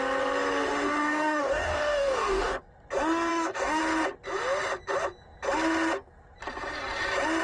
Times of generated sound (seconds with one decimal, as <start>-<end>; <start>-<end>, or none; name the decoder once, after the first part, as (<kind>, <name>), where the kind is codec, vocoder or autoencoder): 1.0-2.6 (codec, DAC); 3.3-3.8